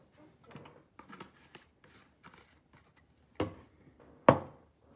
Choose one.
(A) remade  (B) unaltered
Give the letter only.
B